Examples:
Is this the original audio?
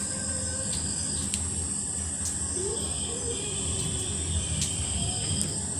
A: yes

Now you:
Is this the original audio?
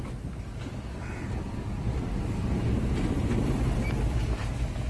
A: yes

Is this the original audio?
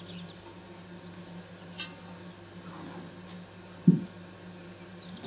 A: yes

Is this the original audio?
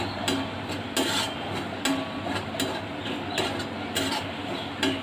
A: yes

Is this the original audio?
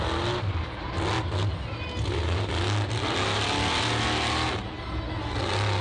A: yes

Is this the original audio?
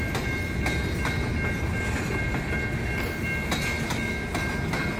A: yes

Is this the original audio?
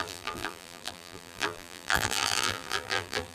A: no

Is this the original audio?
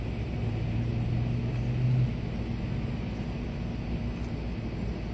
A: yes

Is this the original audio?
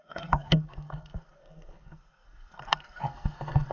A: no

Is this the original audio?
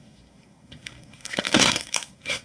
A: no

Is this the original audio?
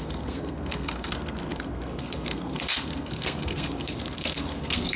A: no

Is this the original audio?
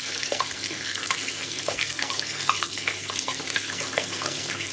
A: no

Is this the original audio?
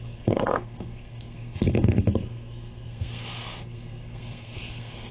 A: no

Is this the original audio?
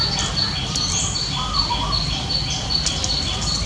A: yes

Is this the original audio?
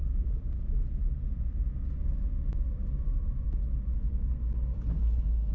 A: yes